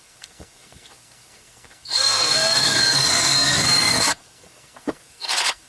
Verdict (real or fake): fake